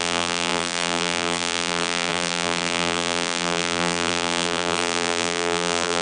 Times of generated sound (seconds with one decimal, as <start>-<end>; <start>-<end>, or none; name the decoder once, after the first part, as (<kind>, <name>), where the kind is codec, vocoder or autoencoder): 0.0-6.0 (vocoder, BigVGAN v2)